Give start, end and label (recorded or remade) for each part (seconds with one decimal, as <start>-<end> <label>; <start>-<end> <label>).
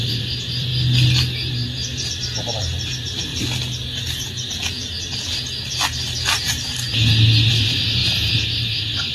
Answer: 0.0-0.7 remade; 0.7-1.5 recorded; 1.5-3.3 remade; 3.3-7.5 recorded; 7.5-9.1 remade